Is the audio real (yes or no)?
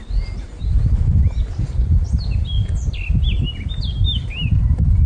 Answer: yes